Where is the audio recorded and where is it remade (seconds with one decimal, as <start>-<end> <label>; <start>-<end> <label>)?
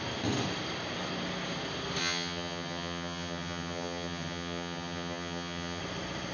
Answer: 0.0-2.0 recorded; 2.0-5.8 remade; 5.8-6.3 recorded